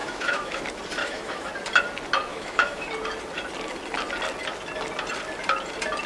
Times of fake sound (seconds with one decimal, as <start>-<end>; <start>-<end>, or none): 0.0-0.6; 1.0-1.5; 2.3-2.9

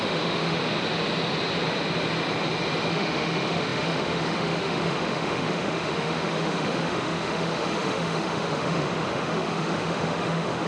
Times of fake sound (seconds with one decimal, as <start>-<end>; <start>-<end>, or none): 0.0-0.6; 2.9-10.7

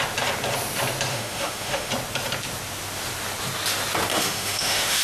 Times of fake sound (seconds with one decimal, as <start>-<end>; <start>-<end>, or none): 1.1-1.9; 4.1-5.0